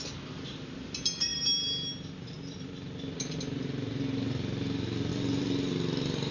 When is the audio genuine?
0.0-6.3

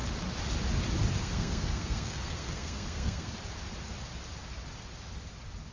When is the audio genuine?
0.0-1.2; 3.3-5.7

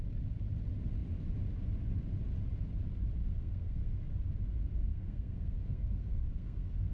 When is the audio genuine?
0.0-3.2; 4.0-4.9

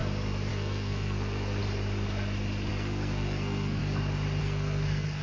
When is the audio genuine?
0.0-0.5; 1.6-2.7; 3.8-4.4

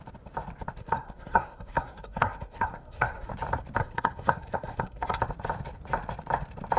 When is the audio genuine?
0.0-0.8; 3.3-3.8; 5.2-6.8

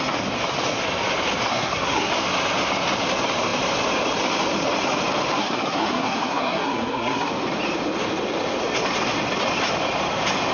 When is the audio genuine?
0.0-1.5; 2.1-5.4; 7.3-10.5